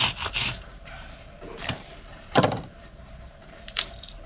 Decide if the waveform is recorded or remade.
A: remade